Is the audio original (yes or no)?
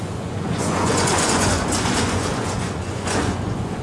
no